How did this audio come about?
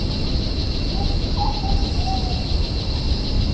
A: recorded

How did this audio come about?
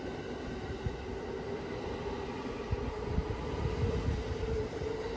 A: recorded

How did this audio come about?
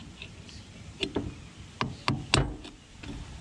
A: recorded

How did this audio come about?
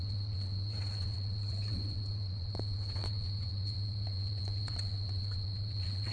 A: remade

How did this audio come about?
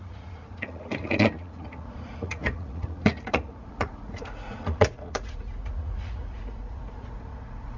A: remade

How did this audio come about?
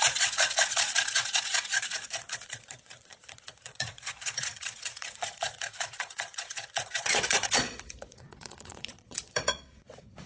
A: remade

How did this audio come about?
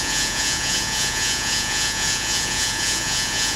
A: remade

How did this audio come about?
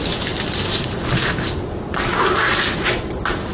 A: recorded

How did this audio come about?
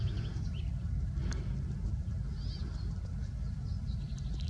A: recorded